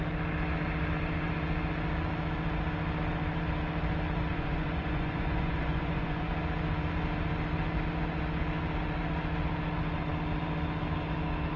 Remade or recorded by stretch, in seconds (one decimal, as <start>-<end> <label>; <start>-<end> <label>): 0.0-4.3 recorded; 4.3-6.3 remade; 6.3-11.6 recorded